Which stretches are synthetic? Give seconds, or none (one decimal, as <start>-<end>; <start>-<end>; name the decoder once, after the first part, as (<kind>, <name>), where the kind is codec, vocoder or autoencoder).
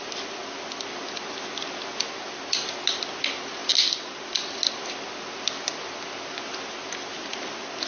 none